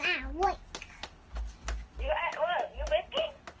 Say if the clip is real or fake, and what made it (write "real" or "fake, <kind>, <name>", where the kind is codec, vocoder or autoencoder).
real